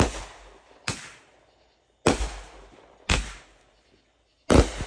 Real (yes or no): yes